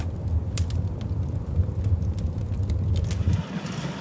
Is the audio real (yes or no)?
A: yes